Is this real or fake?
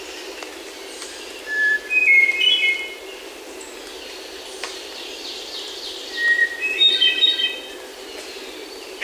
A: real